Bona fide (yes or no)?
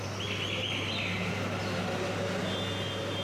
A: yes